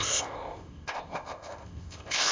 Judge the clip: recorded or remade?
remade